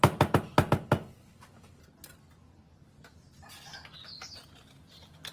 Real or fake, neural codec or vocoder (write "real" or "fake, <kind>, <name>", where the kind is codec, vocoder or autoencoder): real